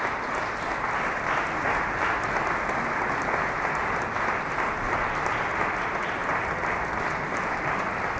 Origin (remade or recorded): recorded